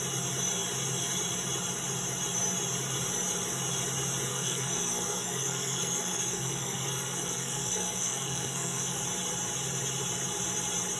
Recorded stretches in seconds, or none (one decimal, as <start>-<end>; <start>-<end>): 0.0-4.3; 9.0-11.0

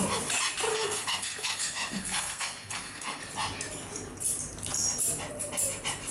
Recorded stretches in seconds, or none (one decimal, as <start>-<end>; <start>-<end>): 0.0-0.7; 3.2-6.1

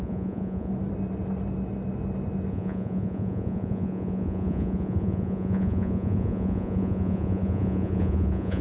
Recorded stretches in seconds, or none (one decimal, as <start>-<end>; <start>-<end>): 0.7-2.5